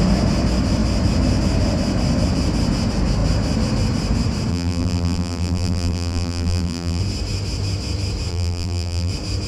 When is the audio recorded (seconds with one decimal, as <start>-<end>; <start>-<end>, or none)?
0.0-4.5; 7.0-8.3; 9.1-9.5